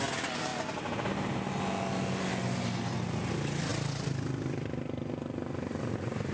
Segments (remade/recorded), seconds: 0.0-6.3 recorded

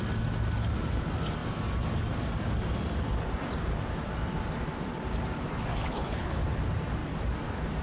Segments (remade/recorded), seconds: 0.0-5.7 recorded; 5.7-6.4 remade; 6.4-7.8 recorded

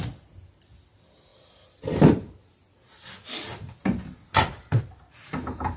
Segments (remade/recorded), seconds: 0.0-5.8 recorded